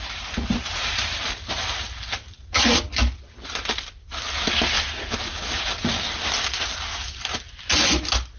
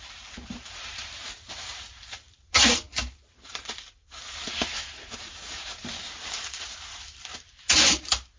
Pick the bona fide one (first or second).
first